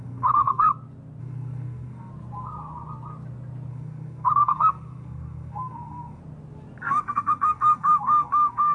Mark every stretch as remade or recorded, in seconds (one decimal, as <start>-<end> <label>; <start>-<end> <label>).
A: 0.0-0.7 remade; 0.7-1.2 recorded; 1.2-2.1 remade; 2.1-3.7 recorded; 3.7-6.2 remade; 6.2-6.8 recorded; 6.8-8.7 remade